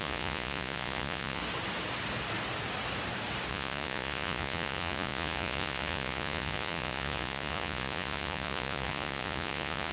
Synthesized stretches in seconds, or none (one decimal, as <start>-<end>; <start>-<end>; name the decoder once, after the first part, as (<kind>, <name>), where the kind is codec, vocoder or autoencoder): 0.0-1.4 (vocoder, Vocos); 3.5-9.9